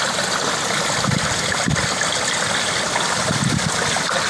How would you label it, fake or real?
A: real